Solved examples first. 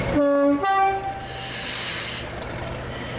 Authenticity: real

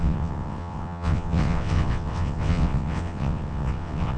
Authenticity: fake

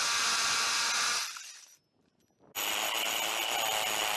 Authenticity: real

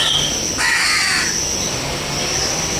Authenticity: real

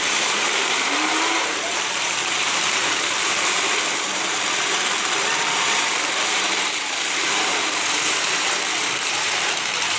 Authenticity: fake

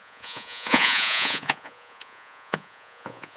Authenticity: fake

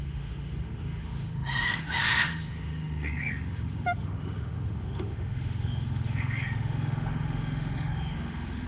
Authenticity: fake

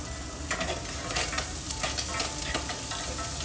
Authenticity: real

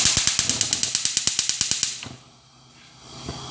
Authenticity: real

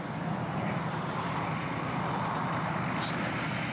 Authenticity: real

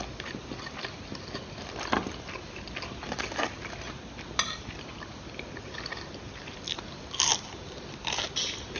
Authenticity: real